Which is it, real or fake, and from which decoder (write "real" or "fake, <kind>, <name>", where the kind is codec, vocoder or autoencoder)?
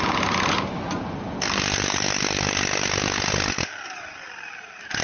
real